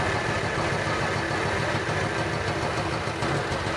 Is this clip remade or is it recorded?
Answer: recorded